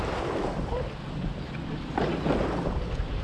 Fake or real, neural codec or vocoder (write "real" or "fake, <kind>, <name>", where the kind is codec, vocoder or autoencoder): real